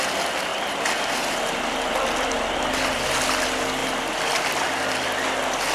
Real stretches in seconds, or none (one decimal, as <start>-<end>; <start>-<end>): 0.0-5.7